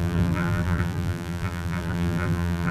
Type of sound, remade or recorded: remade